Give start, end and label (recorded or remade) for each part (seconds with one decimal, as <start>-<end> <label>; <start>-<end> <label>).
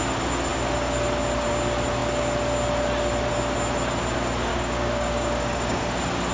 0.0-4.5 recorded; 4.5-5.8 remade; 5.8-6.3 recorded